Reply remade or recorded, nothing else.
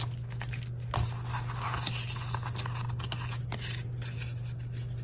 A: recorded